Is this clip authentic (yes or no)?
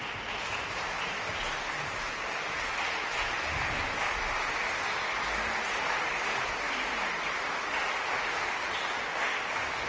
yes